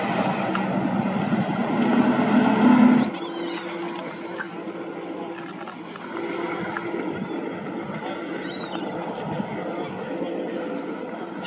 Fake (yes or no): no